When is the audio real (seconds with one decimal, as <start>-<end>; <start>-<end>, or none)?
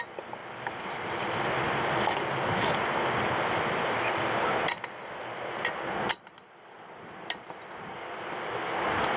0.0-9.2